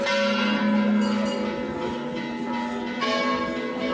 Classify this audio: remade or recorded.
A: recorded